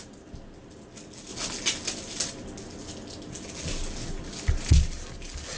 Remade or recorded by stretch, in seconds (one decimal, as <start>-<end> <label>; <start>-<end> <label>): 0.0-5.6 recorded